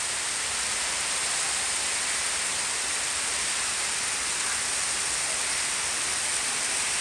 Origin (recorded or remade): recorded